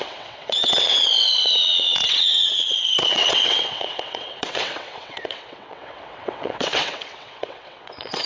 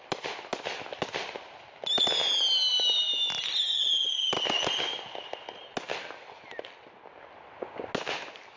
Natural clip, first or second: second